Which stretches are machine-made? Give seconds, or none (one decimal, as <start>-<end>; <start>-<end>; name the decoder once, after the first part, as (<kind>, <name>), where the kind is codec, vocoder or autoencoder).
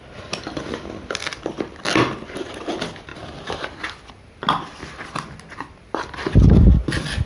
none